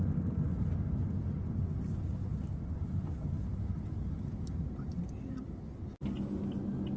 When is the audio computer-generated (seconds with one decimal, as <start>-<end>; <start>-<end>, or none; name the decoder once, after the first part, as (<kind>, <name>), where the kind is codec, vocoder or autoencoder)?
2.3-3.0 (vocoder, BigVGAN v2)